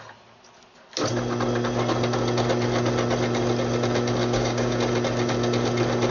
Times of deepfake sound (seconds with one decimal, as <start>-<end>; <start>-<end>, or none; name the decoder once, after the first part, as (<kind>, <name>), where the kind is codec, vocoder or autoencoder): 4.2-4.8 (codec, DAC)